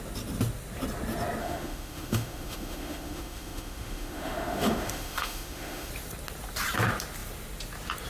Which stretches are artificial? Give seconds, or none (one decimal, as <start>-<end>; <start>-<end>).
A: 1.4-5.9